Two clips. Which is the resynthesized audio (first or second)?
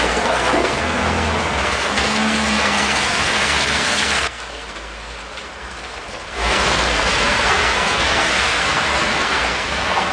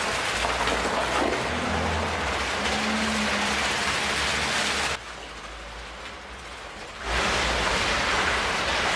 first